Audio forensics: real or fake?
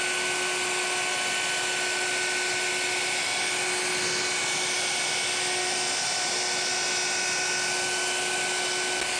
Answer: real